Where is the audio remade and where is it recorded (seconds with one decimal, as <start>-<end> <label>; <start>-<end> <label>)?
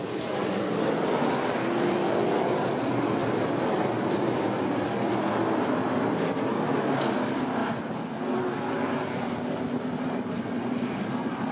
0.0-11.5 recorded